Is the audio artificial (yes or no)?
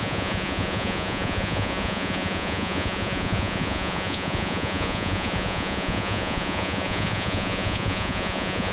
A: yes